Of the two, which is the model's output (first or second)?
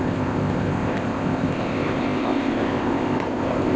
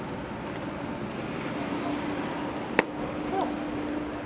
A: first